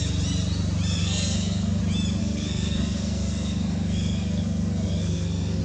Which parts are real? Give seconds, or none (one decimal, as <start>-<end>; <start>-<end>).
0.0-1.0; 1.8-2.2